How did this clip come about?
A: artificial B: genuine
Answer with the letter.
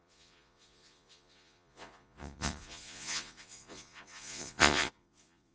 A